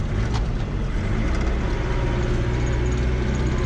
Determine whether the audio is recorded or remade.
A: recorded